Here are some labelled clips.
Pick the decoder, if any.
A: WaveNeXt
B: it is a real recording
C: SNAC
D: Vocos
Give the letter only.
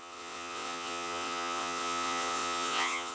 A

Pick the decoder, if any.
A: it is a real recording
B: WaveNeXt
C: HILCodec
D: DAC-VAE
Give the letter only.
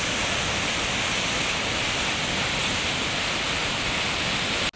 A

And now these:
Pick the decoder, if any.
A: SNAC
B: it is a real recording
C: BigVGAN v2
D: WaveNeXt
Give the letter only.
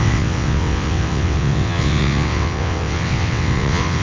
D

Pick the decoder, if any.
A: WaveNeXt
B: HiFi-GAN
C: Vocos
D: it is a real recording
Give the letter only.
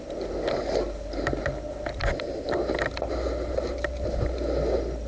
D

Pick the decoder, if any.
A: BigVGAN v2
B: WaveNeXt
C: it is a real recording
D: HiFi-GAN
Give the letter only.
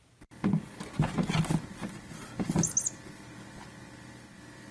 C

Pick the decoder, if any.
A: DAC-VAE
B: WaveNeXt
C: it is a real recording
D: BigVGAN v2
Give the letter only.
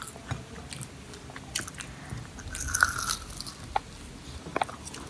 C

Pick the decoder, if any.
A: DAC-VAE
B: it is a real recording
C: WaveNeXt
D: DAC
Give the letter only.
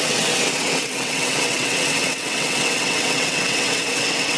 C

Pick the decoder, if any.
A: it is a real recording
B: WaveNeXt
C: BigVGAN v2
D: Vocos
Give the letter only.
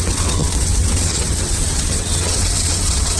B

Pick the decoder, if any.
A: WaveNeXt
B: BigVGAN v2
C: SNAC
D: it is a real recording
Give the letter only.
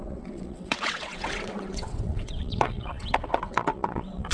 A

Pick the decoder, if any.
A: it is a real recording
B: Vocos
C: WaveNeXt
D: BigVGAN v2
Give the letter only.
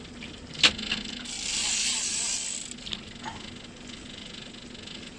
A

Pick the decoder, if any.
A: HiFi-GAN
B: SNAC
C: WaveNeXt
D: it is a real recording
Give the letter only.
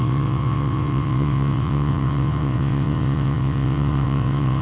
C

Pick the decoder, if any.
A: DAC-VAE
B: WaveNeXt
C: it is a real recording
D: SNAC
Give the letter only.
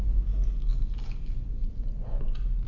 C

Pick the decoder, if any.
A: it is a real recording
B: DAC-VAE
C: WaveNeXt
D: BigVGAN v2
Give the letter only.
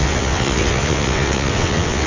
C